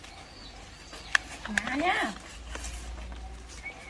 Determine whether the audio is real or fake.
real